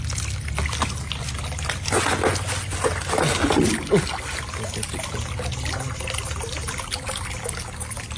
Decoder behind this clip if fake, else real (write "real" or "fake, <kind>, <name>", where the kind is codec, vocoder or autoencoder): real